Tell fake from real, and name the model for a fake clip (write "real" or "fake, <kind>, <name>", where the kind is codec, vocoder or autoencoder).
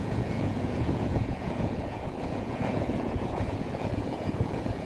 fake, vocoder, Vocos